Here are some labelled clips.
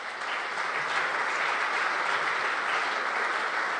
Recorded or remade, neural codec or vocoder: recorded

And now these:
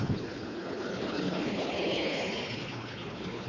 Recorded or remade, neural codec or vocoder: remade, codec, HILCodec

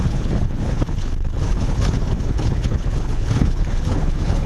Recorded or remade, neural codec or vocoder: remade, codec, HILCodec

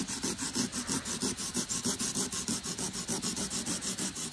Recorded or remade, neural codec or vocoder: recorded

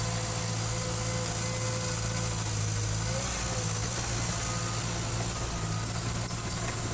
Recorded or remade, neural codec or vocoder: recorded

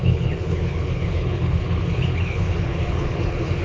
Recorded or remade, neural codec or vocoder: remade, codec, HILCodec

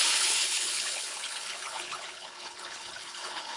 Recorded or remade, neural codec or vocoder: remade, codec, HILCodec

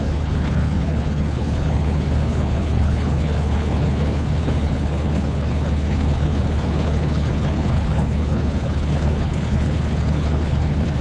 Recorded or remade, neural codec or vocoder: remade, codec, HILCodec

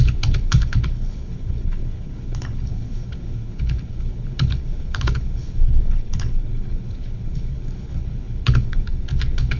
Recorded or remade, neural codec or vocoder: remade, codec, HILCodec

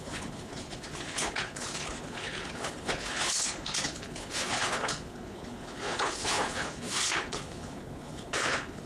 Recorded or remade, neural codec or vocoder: remade, codec, HILCodec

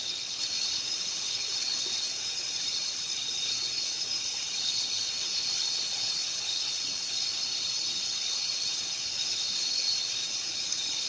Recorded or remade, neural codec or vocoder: remade, codec, HILCodec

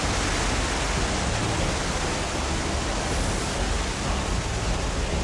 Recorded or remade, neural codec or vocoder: recorded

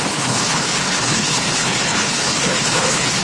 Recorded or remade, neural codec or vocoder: remade, codec, HILCodec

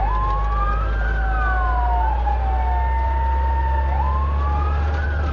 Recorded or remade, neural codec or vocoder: recorded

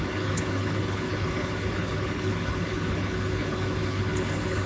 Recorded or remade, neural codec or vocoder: remade, codec, HILCodec